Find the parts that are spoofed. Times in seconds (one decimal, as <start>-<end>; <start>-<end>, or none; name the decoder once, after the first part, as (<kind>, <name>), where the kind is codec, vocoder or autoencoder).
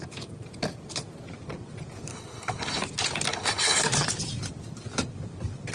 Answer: 2.1-2.8 (codec, HILCodec); 3.3-3.8